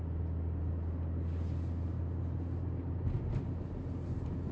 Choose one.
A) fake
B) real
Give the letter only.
B